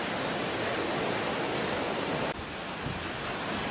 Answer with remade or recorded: recorded